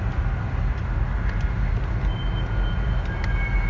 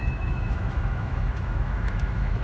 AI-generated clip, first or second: second